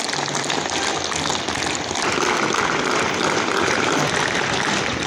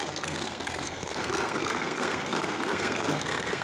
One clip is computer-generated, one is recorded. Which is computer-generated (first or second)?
second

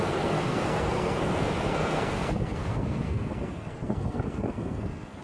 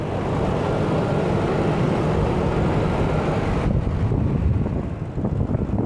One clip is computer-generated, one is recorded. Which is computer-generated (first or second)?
first